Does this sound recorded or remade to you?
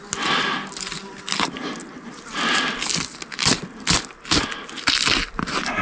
recorded